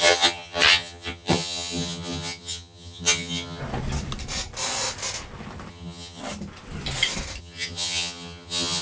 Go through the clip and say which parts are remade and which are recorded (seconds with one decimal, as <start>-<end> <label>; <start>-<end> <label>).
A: 0.0-3.6 remade; 3.6-5.7 recorded; 5.7-6.2 remade; 6.2-7.4 recorded; 7.4-8.8 remade